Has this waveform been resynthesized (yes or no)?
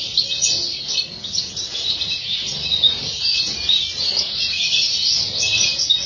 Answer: no